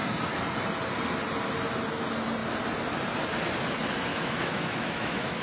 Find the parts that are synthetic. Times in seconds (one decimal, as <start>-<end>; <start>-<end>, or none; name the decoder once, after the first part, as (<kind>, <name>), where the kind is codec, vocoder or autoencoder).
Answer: 4.1-5.4 (autoencoder, DAC-VAE)